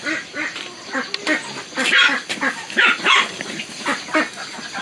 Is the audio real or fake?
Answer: real